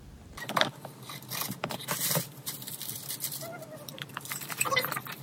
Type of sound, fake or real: fake